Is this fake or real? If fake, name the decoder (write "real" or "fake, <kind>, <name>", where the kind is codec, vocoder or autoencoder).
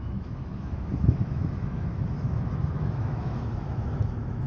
fake, autoencoder, DAC-VAE